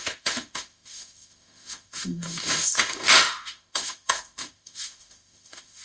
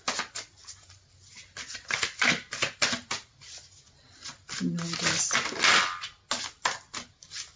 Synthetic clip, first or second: first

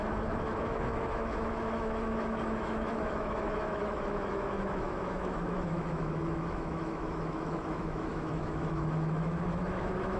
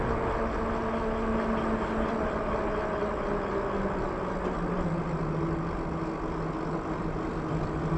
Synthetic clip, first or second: first